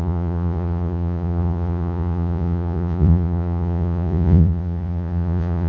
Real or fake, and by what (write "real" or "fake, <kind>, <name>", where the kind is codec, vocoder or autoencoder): fake, vocoder, Vocos